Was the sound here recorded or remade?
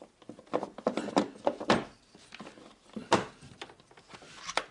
recorded